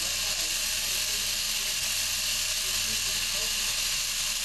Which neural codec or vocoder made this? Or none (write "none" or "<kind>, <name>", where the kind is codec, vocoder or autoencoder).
none